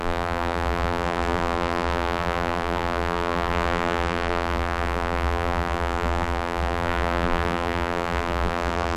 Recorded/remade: remade